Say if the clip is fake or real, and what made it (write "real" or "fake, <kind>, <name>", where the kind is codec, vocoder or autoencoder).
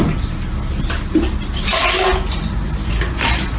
real